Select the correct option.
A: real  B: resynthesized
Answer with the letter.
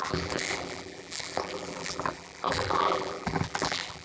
B